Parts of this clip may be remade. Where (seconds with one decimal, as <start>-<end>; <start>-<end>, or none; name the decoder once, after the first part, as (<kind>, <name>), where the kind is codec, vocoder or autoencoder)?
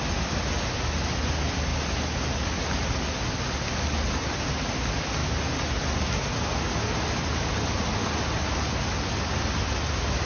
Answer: none